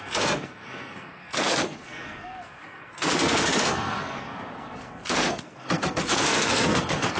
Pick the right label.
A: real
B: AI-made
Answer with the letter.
B